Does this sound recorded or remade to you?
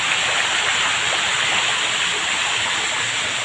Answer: recorded